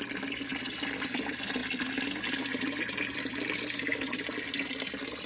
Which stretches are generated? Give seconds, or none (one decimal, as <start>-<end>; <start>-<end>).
0.5-1.2